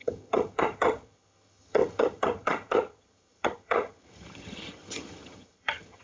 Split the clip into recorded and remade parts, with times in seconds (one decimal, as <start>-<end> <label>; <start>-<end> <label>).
0.0-6.0 remade